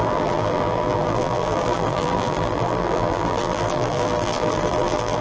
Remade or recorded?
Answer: remade